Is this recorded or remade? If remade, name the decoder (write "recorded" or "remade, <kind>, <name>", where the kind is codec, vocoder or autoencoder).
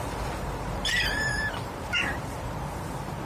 remade, vocoder, BigVGAN v2